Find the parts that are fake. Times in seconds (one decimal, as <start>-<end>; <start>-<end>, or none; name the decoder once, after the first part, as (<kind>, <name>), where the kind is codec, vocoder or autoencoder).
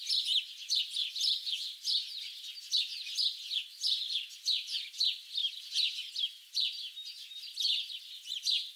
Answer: none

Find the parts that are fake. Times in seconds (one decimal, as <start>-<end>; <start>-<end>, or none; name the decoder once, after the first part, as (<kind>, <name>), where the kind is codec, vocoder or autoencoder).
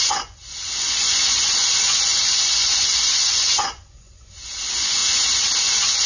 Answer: 0.0-5.0 (vocoder, Vocos); 5.6-6.1